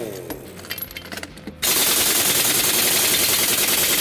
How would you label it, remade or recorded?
recorded